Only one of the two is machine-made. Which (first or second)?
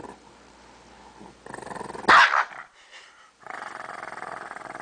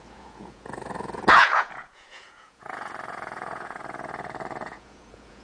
second